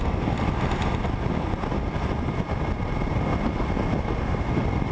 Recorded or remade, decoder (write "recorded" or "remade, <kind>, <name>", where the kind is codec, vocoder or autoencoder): recorded